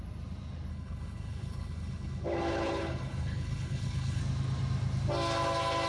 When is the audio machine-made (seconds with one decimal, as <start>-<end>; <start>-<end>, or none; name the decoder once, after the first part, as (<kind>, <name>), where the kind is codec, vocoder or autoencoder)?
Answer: 0.7-4.2 (codec, HILCodec)